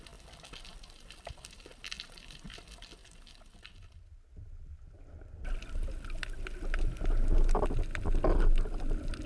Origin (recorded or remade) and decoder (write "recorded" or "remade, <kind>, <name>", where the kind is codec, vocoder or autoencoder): recorded